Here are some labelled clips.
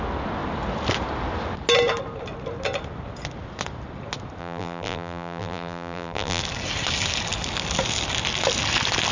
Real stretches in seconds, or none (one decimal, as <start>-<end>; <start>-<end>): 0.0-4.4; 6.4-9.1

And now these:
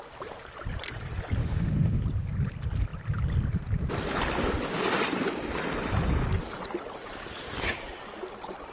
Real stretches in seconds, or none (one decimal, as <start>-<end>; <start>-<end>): 0.0-1.4; 2.0-8.7

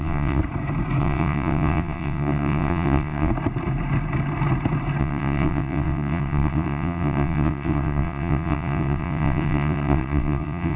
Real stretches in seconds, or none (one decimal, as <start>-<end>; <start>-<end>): 0.4-1.0; 3.3-5.0

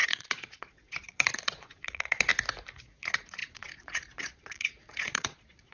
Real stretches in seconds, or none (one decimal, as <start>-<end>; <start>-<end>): 2.3-2.8

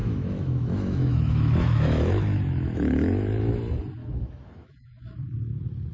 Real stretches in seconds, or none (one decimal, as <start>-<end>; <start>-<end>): 3.5-4.0; 5.2-5.9